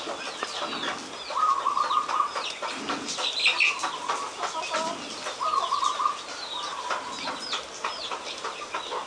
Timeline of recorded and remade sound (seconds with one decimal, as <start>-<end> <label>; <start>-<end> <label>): 0.0-9.1 recorded